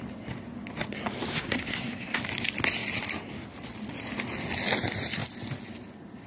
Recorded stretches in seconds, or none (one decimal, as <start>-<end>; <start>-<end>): 0.0-1.3; 2.2-6.3